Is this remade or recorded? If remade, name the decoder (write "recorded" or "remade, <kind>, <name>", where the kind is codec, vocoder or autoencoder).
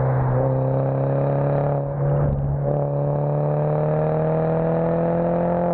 recorded